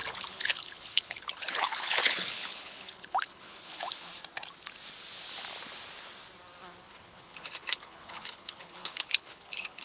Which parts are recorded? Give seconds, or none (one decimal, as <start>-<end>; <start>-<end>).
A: 4.1-6.9